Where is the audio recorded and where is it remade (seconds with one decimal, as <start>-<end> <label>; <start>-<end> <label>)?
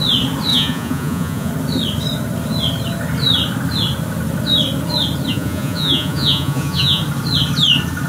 0.0-0.5 recorded; 0.5-1.5 remade; 1.5-5.3 recorded; 5.3-7.0 remade; 7.0-8.1 recorded